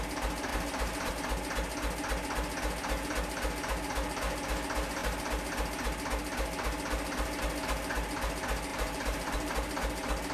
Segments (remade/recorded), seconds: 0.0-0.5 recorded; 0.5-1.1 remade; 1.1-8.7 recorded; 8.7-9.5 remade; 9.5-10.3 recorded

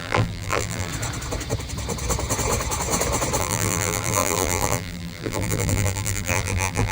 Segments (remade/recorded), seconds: 0.0-0.9 remade; 0.9-3.4 recorded; 3.4-6.9 remade